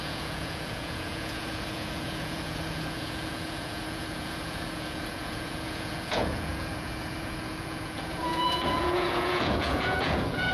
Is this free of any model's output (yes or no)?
no